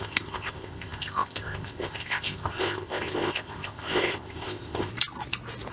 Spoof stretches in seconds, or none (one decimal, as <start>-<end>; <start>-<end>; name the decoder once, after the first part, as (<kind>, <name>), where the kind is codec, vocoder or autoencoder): 0.0-4.9 (codec, ZipCodec)